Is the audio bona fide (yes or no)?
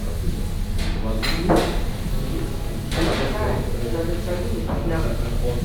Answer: yes